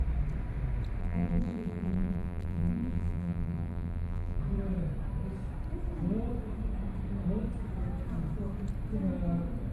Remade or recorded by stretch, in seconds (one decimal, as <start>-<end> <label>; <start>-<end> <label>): 0.0-1.0 recorded; 1.0-4.4 remade; 4.4-9.7 recorded